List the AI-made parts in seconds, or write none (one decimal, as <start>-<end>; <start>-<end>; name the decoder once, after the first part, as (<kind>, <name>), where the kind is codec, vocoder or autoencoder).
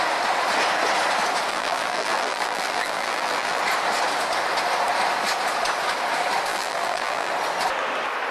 1.5-3.6 (vocoder, BigVGAN v2); 6.5-7.3